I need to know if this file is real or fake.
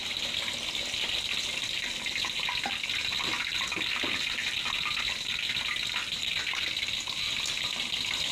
real